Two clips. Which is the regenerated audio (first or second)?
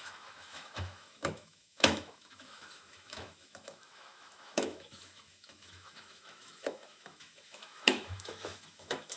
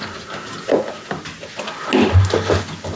first